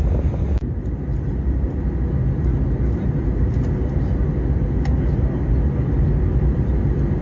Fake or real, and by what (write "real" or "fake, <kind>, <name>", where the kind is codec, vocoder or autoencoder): real